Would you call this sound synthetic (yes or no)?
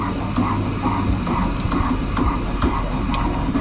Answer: no